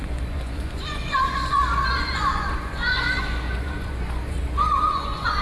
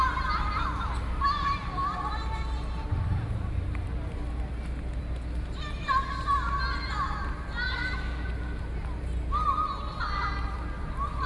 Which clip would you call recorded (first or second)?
second